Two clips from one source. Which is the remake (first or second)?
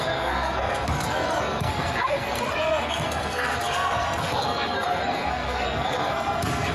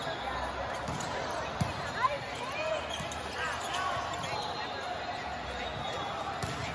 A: first